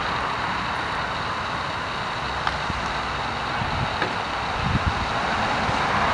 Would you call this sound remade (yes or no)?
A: no